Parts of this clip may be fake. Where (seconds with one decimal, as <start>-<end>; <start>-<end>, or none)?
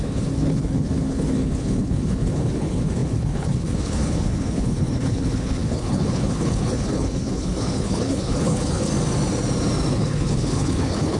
0.0-8.9; 9.9-11.2